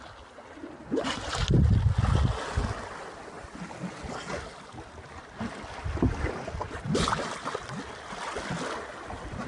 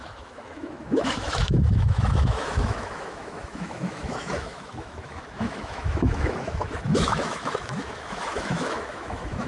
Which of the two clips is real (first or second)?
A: first